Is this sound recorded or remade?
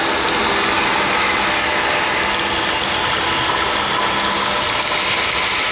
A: recorded